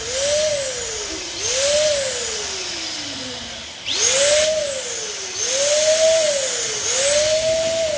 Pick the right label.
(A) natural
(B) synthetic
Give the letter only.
A